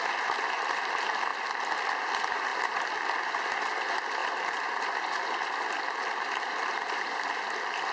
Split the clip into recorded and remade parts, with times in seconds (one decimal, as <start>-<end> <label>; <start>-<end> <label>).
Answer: 0.0-7.9 recorded